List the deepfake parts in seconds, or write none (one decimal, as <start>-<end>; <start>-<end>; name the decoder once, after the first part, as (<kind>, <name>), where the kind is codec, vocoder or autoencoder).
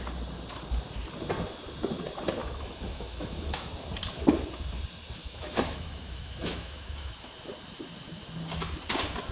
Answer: 2.4-3.7 (autoencoder, DAC-VAE); 5.2-7.3